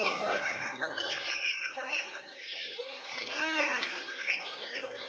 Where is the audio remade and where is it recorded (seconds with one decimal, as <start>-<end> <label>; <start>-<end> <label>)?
0.0-5.1 remade

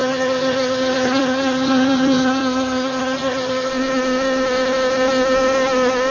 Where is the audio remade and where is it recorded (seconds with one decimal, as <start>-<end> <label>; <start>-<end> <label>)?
0.0-3.7 remade; 3.7-6.1 recorded

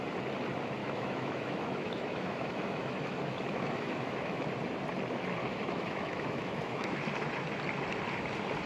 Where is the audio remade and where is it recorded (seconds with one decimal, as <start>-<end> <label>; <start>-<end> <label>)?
0.0-0.8 recorded; 0.8-4.5 remade; 4.5-5.4 recorded; 5.4-7.0 remade; 7.0-8.7 recorded

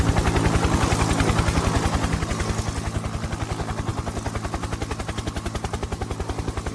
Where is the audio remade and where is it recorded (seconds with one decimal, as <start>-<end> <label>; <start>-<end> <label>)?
0.0-6.7 recorded

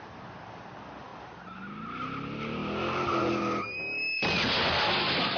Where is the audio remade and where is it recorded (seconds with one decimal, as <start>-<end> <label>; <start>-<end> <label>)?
0.0-5.4 recorded

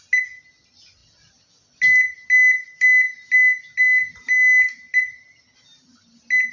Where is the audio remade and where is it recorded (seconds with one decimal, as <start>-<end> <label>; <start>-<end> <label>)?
0.0-6.5 recorded

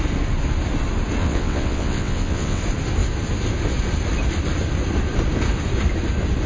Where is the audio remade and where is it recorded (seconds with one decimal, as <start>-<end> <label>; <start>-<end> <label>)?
0.0-1.2 recorded; 1.2-2.6 remade; 2.6-6.5 recorded